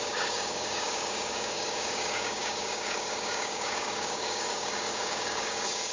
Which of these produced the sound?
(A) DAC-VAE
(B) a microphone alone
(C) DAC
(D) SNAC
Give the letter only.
C